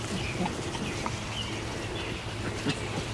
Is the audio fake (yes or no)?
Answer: no